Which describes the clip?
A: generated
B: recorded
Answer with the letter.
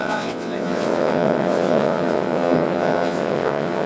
A